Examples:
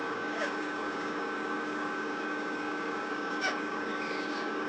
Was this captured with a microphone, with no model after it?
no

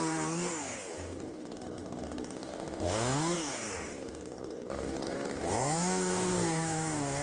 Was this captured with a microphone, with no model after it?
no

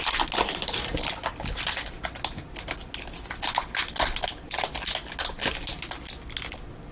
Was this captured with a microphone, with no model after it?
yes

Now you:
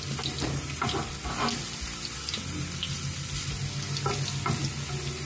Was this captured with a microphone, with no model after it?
yes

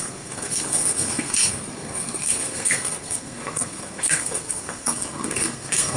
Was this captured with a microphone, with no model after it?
no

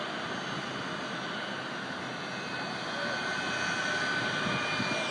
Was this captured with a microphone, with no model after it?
yes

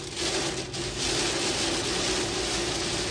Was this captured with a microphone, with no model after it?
yes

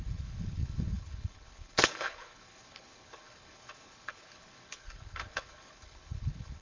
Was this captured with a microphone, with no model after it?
no